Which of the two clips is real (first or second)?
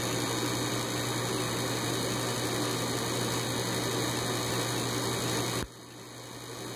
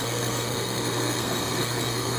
first